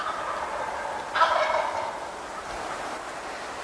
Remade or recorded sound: recorded